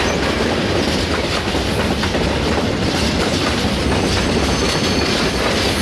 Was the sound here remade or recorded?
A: recorded